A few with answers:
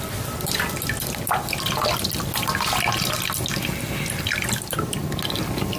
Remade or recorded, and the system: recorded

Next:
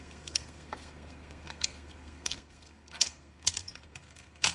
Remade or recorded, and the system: remade, codec, SNAC